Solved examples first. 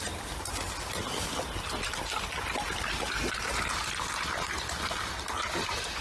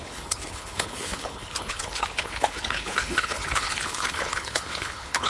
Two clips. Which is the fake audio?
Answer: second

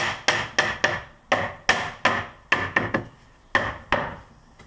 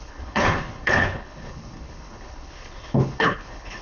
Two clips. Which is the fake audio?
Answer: second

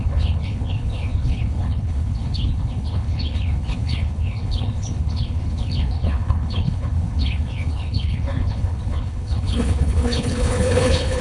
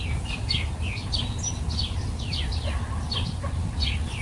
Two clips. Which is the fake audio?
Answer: first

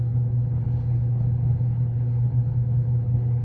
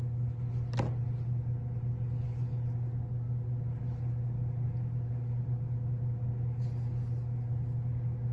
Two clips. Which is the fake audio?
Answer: first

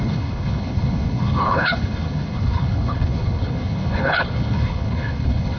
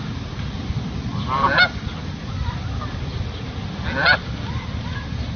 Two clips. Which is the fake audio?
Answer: first